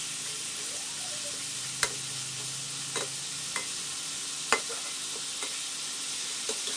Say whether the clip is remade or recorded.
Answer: recorded